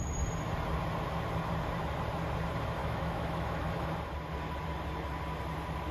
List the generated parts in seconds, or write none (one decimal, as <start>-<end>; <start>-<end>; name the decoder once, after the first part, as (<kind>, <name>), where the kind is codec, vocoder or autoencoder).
2.8-3.9 (autoencoder, DAC-VAE)